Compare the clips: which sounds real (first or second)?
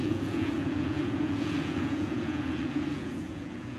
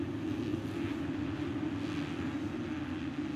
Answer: second